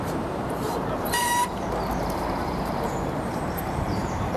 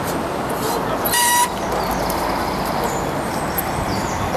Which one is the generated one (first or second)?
first